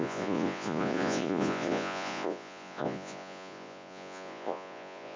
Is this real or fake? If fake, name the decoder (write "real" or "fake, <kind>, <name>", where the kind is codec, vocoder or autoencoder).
fake, vocoder, Vocos